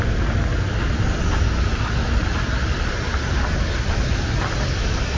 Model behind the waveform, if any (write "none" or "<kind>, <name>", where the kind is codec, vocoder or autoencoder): none